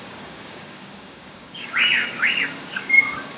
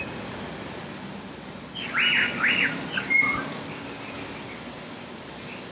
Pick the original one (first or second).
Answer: second